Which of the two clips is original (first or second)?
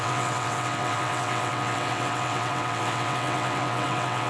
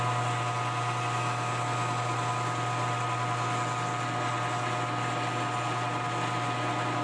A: second